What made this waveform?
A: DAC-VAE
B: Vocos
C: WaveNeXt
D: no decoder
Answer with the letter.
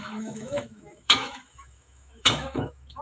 A